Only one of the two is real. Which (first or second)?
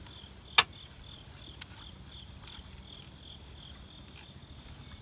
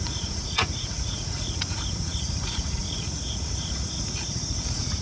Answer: first